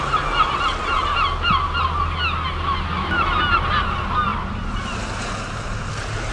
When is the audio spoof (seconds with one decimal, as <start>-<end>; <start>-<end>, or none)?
none